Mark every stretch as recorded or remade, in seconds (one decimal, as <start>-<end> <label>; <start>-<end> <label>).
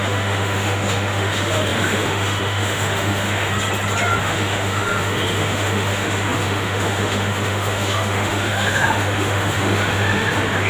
0.0-3.5 remade; 3.5-4.2 recorded; 4.2-10.7 remade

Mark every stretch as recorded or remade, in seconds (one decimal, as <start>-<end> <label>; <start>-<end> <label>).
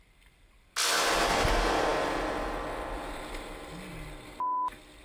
0.0-5.0 recorded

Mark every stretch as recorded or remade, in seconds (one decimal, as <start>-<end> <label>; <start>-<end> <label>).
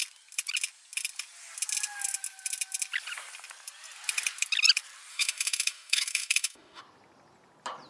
0.0-5.1 recorded; 5.1-6.8 remade; 6.8-7.9 recorded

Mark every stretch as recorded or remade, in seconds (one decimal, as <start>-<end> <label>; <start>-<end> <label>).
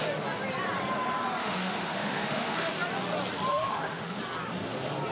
0.0-1.4 recorded; 1.4-2.7 remade; 2.7-3.5 recorded; 3.5-4.2 remade; 4.2-5.1 recorded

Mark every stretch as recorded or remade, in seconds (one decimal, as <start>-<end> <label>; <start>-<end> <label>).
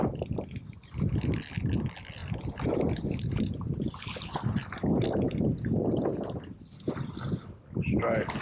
0.0-8.4 recorded